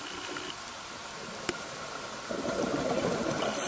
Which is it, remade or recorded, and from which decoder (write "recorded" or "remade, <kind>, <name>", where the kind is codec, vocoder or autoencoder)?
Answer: recorded